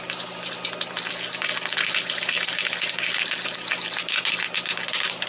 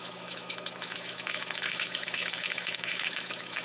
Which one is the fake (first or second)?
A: second